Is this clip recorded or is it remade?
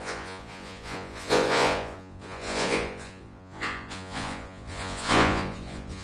remade